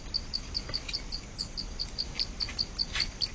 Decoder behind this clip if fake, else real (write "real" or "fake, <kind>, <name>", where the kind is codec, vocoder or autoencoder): real